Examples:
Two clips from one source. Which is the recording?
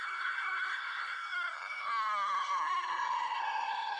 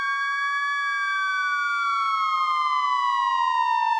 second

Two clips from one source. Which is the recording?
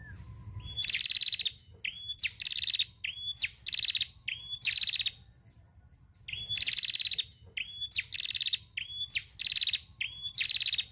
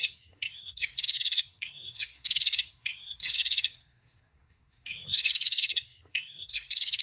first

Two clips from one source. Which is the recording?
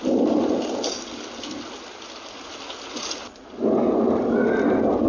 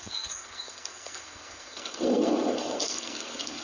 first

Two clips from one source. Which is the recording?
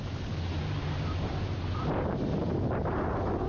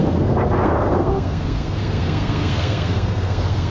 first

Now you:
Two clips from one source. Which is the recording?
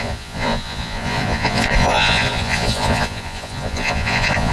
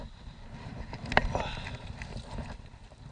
second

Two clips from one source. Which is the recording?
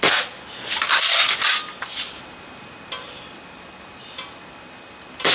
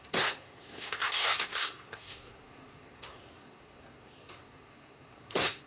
first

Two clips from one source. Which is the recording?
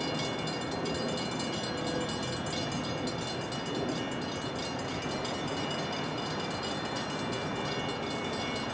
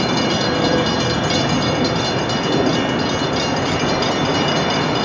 first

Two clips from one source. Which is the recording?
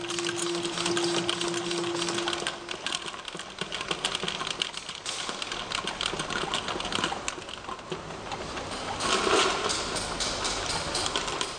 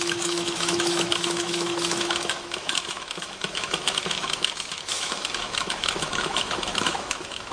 first